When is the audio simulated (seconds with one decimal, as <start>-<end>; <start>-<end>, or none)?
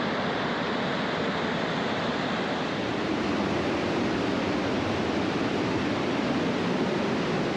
none